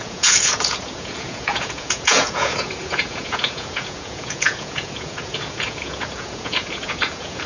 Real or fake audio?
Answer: fake